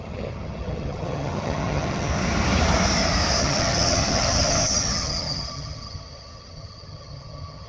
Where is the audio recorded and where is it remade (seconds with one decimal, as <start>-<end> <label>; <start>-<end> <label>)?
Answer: 0.0-2.1 remade; 2.1-3.4 recorded; 3.4-7.7 remade